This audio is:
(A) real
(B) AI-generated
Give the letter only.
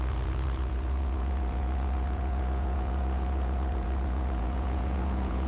B